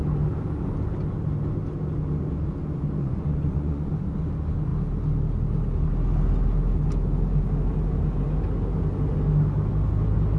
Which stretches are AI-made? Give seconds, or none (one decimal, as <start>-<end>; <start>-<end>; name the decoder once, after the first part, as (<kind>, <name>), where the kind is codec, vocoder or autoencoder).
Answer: 3.0-3.9 (vocoder, Vocos)